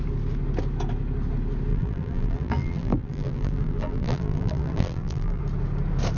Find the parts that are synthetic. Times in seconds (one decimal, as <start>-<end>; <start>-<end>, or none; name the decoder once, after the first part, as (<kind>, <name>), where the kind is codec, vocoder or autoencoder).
1.7-5.4 (vocoder, BigVGAN v2)